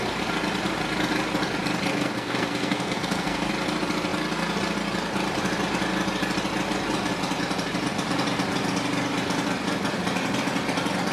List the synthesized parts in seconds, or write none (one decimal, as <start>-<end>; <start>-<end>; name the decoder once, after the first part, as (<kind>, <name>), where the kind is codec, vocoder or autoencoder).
1.9-3.5 (codec, SNAC)